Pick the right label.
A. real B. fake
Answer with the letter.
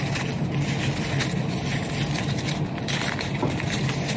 A